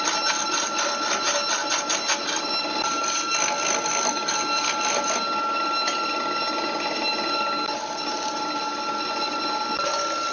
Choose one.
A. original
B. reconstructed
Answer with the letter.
A